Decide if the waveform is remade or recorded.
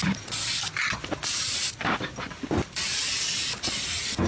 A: recorded